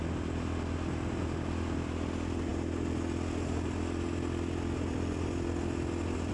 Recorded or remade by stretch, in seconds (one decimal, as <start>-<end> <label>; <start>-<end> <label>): 0.0-6.3 recorded

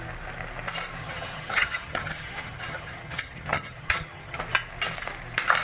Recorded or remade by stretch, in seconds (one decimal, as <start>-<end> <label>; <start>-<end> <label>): 0.0-1.0 recorded; 1.0-4.4 remade; 4.4-5.6 recorded

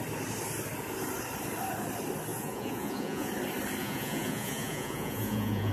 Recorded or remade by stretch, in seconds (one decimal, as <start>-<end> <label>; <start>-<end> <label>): 0.0-2.3 recorded; 2.3-3.3 remade; 3.3-3.8 recorded; 3.8-5.7 remade

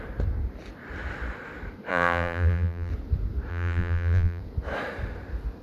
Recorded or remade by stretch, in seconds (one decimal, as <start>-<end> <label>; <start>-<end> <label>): 0.0-1.9 recorded; 1.9-2.9 remade; 2.9-3.5 recorded; 3.5-4.4 remade; 4.4-5.6 recorded

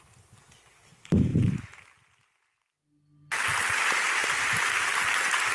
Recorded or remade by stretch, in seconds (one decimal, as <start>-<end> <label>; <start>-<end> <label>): 0.0-5.5 recorded

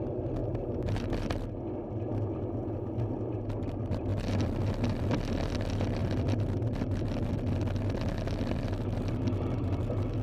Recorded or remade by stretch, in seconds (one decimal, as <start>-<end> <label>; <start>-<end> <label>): 0.0-10.2 recorded

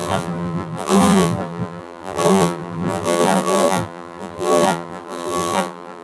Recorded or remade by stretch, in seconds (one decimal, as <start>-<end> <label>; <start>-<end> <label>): 0.0-6.0 remade